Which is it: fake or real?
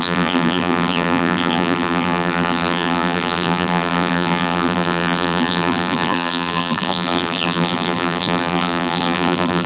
fake